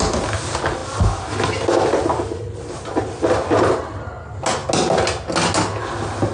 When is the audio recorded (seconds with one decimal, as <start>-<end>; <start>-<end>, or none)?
0.0-6.3